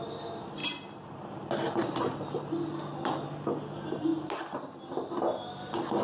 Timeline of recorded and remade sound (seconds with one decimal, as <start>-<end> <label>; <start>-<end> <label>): 0.0-6.0 recorded